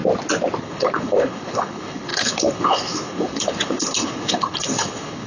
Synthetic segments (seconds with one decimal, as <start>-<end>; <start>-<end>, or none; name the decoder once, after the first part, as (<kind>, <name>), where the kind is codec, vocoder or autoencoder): 0.6-5.3 (codec, HILCodec)